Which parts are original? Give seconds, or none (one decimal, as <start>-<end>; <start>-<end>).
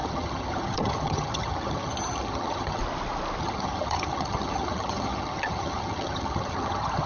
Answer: 2.8-3.4